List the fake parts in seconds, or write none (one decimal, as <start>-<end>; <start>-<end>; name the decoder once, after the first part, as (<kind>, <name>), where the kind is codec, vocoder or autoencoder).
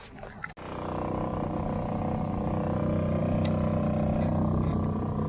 none